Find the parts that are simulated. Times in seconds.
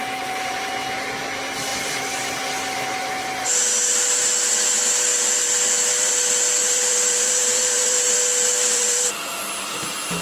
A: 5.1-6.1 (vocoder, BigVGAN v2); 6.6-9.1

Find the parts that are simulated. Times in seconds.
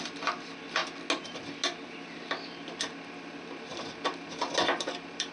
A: 0.0-0.8 (vocoder, BigVGAN v2); 2.1-5.3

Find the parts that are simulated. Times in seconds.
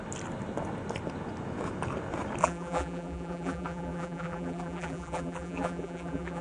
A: 2.4-6.4 (vocoder, BigVGAN v2)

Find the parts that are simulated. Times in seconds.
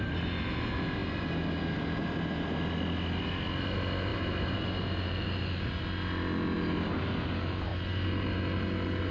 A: 4.1-5.1 (vocoder, BigVGAN v2); 7.7-8.4